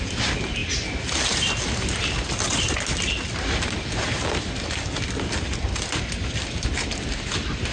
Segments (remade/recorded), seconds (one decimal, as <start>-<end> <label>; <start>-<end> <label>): 0.0-7.7 recorded